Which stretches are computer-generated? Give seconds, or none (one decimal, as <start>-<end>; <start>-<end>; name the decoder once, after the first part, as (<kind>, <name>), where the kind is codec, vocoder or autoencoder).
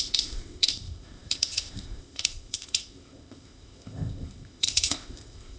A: 0.0-5.6 (codec, ZipCodec)